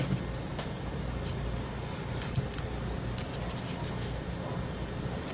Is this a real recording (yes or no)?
yes